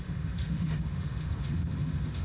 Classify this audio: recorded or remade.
remade